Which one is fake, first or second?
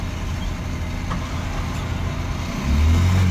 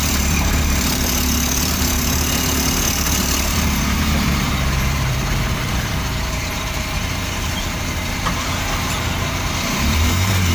second